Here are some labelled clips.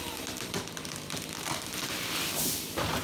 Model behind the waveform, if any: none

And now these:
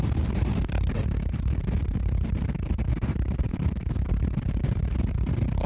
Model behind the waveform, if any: vocoder, BigVGAN v2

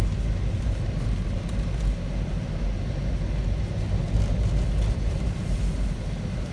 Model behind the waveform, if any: none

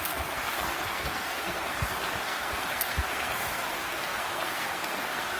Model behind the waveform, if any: codec, SNAC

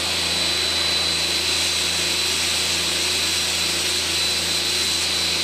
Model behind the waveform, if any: none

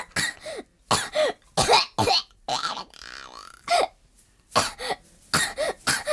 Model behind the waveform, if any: none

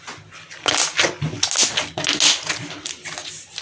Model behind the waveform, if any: none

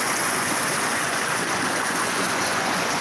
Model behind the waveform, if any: vocoder, Vocos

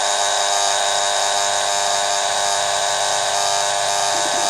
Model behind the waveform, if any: none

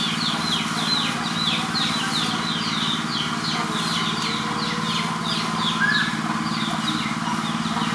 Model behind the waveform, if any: none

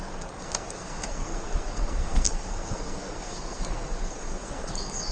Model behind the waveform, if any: codec, SNAC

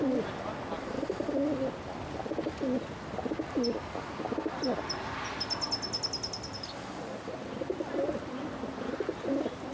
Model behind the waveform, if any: none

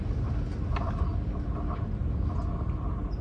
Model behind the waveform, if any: none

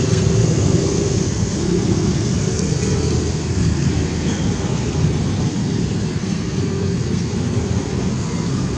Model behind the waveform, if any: codec, SNAC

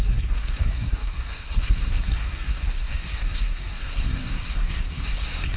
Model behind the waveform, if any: codec, SNAC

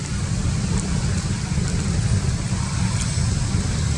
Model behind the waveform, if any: none